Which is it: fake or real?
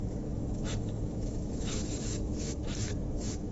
fake